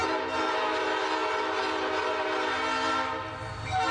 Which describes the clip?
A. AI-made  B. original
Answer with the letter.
B